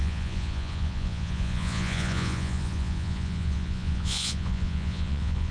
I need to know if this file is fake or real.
fake